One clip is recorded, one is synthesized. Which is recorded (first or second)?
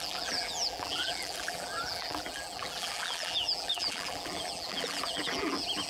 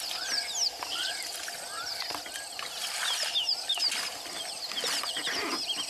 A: second